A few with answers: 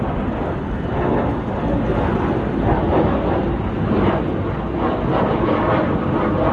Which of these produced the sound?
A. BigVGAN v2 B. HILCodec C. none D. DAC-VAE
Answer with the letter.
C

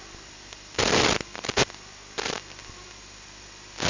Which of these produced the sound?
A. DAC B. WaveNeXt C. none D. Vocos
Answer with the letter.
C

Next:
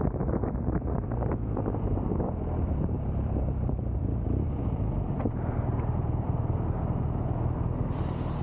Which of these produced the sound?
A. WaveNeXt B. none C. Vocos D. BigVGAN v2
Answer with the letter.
D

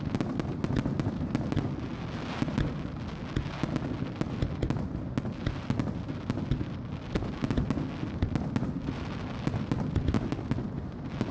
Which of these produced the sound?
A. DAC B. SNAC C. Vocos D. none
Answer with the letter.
D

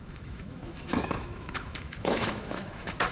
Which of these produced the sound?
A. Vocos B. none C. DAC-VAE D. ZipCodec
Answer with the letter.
C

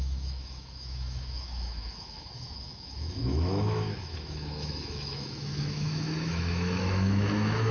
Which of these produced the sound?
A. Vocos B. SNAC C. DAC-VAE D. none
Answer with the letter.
C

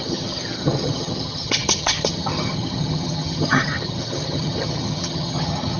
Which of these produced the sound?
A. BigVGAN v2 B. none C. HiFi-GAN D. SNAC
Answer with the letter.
C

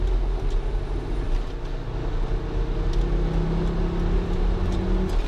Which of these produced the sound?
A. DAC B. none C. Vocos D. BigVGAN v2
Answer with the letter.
B